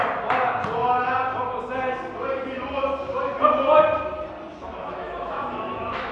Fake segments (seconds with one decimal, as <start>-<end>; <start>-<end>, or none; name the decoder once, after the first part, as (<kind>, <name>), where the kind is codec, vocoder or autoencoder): 4.5-6.1 (autoencoder, DAC-VAE)